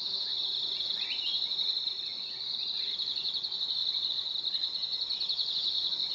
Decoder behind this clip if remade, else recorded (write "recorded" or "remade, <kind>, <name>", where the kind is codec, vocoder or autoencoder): recorded